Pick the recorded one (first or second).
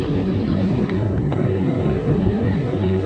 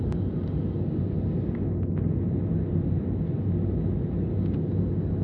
second